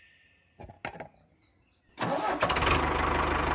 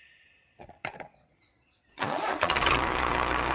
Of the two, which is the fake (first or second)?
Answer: second